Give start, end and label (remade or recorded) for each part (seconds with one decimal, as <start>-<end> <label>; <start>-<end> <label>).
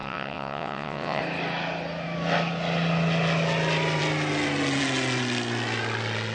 0.0-1.2 remade; 1.2-6.3 recorded